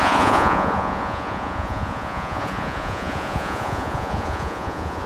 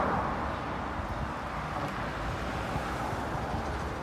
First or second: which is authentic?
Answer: second